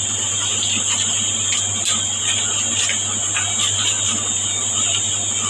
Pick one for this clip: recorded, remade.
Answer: recorded